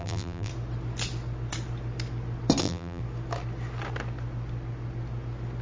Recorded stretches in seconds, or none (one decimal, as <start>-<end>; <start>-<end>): 0.5-2.6; 3.0-5.6

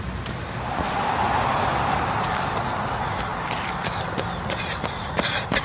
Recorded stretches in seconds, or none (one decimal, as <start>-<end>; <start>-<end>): 0.0-5.6